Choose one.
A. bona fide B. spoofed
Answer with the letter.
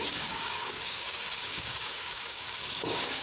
B